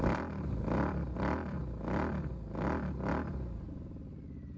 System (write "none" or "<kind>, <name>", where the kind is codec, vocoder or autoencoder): vocoder, BigVGAN v2